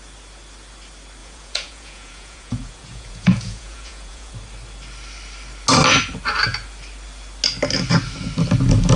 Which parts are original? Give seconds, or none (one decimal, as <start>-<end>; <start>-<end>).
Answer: 0.0-1.2; 4.3-9.0